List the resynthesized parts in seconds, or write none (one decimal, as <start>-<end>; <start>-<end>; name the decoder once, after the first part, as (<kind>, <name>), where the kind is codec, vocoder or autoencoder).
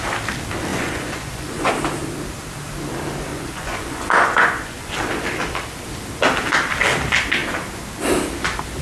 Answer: 0.7-1.7 (vocoder, Vocos); 3.3-4.9